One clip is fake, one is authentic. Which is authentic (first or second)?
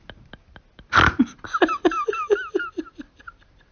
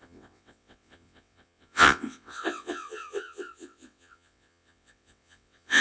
first